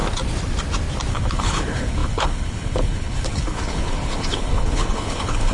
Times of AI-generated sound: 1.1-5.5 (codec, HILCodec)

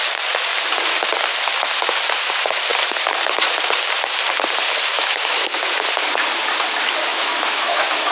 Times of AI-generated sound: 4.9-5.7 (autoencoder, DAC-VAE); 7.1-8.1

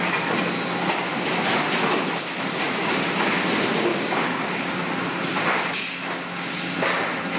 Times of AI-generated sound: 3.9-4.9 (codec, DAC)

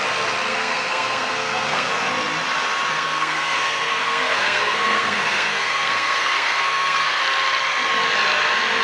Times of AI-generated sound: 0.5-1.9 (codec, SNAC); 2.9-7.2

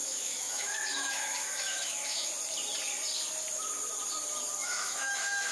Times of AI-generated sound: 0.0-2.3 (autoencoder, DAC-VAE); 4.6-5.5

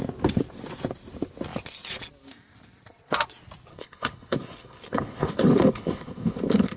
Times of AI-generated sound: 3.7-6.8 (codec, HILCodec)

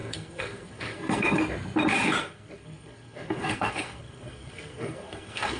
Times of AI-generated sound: 0.0-1.4 (codec, SNAC); 2.2-5.6